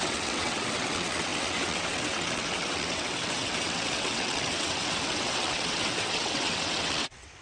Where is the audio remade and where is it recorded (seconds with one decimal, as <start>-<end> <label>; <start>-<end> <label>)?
0.0-7.4 remade